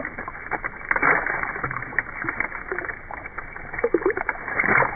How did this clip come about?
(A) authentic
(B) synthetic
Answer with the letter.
A